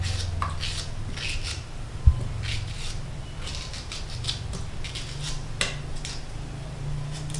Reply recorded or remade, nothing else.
recorded